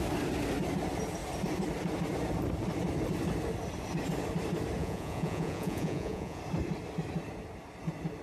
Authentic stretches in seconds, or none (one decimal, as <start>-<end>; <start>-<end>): 0.0-4.8; 6.4-8.2